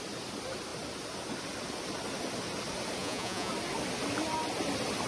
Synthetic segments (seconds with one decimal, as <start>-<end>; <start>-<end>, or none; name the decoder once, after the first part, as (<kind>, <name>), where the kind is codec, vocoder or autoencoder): 3.0-3.5 (vocoder, Vocos)